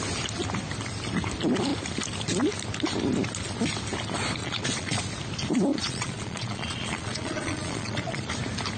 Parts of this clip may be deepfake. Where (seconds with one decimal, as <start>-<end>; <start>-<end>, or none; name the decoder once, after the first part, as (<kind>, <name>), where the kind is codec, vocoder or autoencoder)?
4.4-5.0 (vocoder, Vocos); 5.7-8.3